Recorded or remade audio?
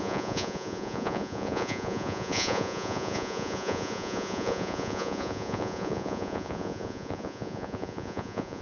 remade